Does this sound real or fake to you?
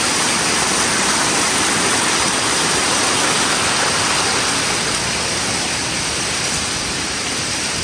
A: real